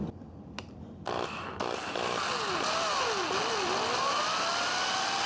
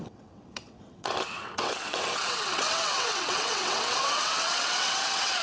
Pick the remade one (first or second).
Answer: second